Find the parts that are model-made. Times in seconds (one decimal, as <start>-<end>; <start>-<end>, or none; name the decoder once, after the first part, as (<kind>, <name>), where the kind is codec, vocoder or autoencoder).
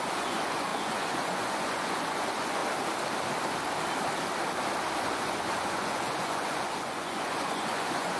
0.0-2.6 (vocoder, Vocos); 5.0-8.2